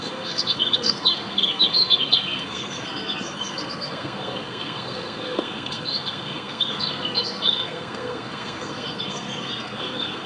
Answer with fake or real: fake